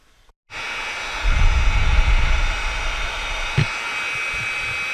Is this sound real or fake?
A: real